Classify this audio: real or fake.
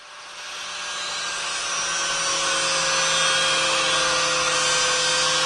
real